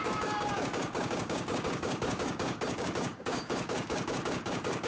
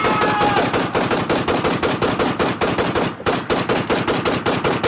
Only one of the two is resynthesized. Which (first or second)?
first